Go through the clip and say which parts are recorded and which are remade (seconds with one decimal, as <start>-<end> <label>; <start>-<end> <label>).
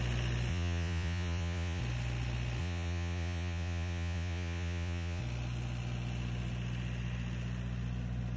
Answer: 0.0-0.5 recorded; 0.5-1.8 remade; 1.8-2.6 recorded; 2.6-5.2 remade; 5.2-8.4 recorded